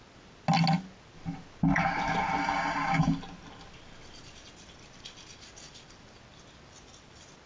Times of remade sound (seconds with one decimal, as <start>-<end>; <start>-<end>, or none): 2.4-3.2

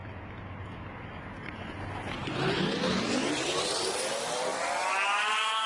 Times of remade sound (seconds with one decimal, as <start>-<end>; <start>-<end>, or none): none